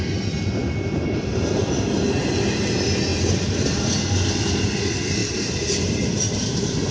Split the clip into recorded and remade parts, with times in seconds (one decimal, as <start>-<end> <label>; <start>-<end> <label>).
0.0-3.1 recorded; 3.1-3.8 remade; 3.8-5.2 recorded; 5.2-6.9 remade